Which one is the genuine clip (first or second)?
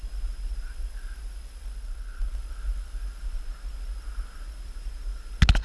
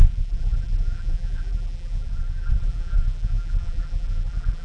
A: first